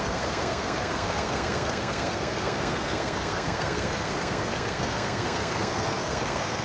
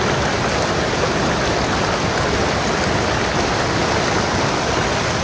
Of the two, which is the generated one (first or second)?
first